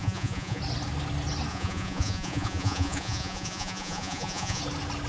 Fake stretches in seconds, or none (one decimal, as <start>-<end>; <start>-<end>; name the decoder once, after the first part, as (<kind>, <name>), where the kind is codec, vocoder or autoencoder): 0.0-0.6 (vocoder, Vocos); 1.5-4.6